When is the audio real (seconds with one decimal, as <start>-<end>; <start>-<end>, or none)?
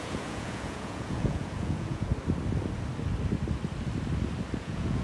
2.1-4.6